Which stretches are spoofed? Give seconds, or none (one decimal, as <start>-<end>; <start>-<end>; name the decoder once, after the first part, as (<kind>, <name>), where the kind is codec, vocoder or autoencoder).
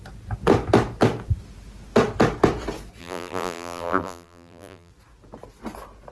3.0-4.9 (vocoder, BigVGAN v2)